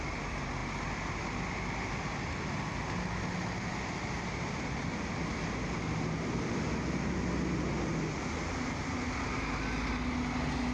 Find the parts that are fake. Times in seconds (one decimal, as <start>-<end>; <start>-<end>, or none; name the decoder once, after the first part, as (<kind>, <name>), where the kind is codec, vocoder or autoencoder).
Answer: none